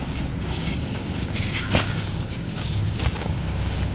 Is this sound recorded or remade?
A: remade